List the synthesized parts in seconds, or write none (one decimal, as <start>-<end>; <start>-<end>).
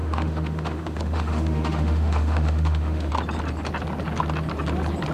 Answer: 0.0-3.1